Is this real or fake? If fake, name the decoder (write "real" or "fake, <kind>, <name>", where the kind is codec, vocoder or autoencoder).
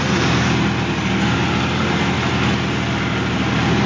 real